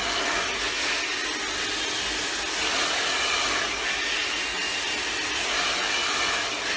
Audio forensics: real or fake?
real